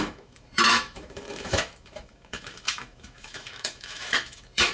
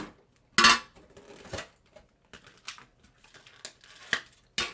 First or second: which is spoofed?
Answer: first